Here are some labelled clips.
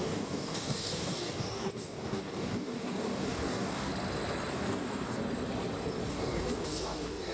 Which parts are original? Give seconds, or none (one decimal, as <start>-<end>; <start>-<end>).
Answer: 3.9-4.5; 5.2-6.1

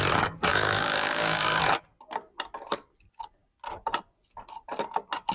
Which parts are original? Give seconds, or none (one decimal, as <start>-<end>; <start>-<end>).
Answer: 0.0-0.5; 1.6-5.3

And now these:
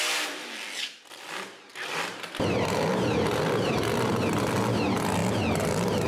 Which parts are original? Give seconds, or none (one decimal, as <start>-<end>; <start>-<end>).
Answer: 0.0-6.1